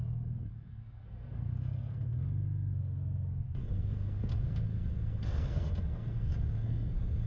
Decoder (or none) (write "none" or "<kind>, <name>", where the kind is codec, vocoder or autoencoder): codec, SNAC